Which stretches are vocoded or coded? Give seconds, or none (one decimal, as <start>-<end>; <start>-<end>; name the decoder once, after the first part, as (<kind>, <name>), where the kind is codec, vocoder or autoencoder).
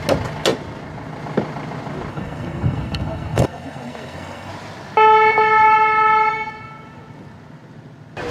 2.1-4.5 (codec, SNAC)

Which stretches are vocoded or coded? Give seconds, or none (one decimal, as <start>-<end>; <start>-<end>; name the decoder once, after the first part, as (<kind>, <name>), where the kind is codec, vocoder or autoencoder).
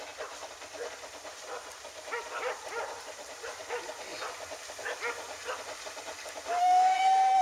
6.6-7.4 (codec, DAC)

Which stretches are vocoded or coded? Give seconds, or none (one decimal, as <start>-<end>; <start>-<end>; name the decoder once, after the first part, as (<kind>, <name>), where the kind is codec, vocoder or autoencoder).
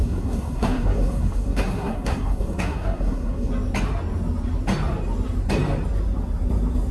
0.0-3.5 (codec, SNAC)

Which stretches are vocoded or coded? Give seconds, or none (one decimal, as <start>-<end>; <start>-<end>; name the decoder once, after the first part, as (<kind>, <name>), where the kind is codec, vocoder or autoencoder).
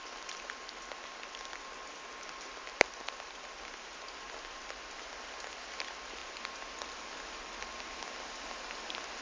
none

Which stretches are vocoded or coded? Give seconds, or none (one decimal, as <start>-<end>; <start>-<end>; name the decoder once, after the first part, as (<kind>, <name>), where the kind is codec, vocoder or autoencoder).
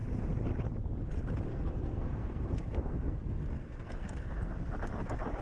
1.5-4.7 (codec, SNAC)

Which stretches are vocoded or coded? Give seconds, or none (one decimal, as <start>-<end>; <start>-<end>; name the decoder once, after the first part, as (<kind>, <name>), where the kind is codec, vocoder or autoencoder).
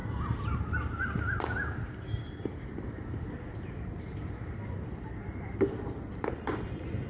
2.8-7.1 (vocoder, BigVGAN v2)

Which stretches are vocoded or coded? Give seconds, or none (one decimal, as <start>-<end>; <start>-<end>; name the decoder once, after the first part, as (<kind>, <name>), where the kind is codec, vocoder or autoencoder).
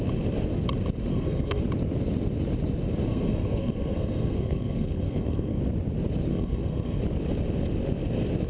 1.1-1.6 (codec, SNAC); 3.1-5.6; 6.3-7.0